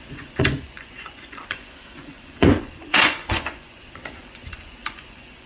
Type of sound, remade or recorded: remade